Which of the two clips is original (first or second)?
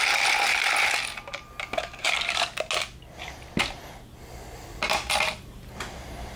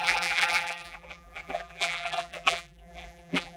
first